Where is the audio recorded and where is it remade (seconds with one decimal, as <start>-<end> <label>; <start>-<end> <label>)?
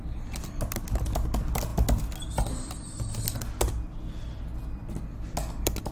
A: 0.0-5.9 recorded